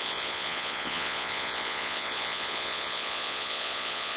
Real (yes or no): no